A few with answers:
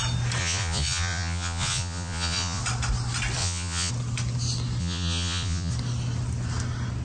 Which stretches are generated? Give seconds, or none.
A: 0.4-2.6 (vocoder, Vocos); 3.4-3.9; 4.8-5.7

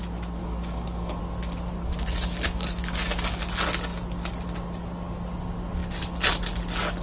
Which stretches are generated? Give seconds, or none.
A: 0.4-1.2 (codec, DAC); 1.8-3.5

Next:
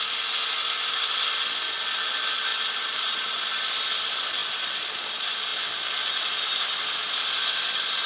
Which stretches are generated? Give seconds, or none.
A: 2.5-3.6 (vocoder, BigVGAN v2)